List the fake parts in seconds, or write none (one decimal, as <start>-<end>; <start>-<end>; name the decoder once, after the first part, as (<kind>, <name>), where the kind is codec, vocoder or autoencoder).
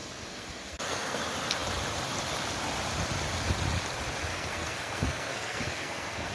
0.0-1.2 (codec, SNAC); 4.3-6.3